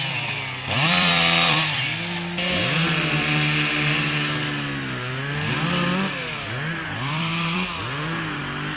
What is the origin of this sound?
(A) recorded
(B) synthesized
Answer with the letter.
B